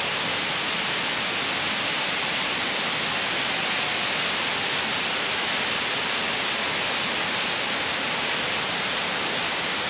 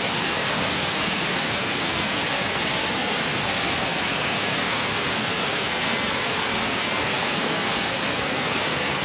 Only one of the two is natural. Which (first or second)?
first